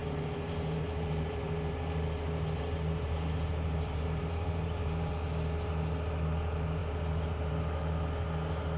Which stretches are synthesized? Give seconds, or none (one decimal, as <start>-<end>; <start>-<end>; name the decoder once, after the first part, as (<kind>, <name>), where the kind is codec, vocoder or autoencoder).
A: 0.0-5.1 (vocoder, BigVGAN v2); 6.8-7.5